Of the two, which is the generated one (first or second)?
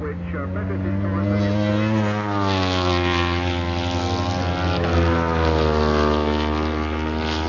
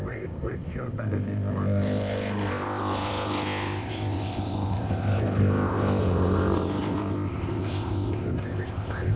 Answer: second